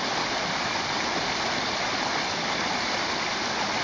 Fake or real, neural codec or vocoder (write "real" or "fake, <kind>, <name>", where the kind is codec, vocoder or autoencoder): real